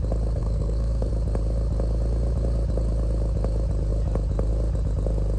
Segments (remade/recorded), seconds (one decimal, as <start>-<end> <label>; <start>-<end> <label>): 0.0-0.4 recorded; 0.4-1.1 remade; 1.1-5.4 recorded